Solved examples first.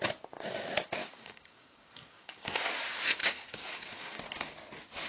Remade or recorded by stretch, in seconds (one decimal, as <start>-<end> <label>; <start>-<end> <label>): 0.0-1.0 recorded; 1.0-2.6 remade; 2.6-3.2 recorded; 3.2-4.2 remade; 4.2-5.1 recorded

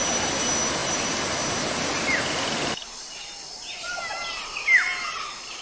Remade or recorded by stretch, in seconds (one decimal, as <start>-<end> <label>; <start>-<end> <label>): 0.0-5.6 recorded

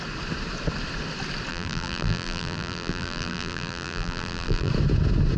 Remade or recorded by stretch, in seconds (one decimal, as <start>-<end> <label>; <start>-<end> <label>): 0.0-1.5 recorded; 1.5-4.7 remade; 4.7-5.4 recorded